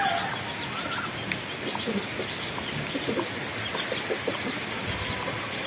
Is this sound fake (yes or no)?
no